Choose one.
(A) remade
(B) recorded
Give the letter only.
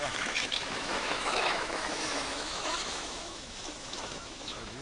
A